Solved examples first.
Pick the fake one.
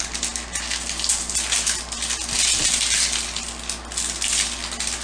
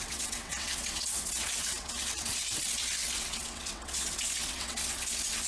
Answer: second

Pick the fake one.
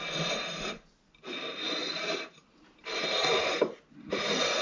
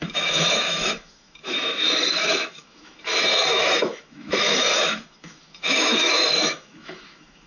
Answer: second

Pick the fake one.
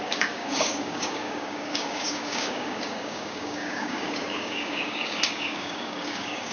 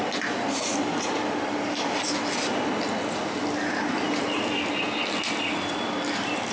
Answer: first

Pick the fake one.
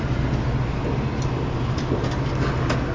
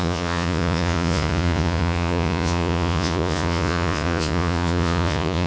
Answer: second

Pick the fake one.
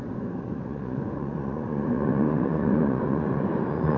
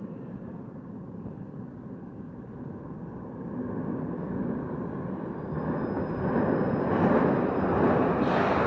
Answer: first